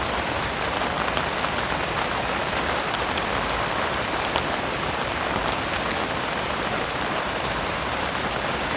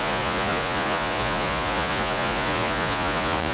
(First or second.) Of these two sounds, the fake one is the second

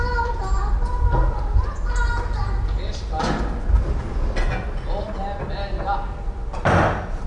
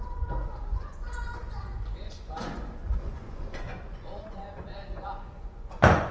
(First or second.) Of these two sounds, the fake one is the second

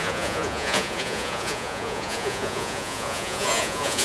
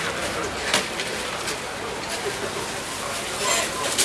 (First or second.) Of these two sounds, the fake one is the first